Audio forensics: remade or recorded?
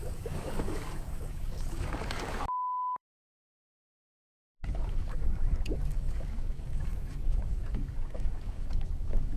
remade